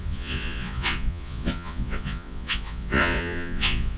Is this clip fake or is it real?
fake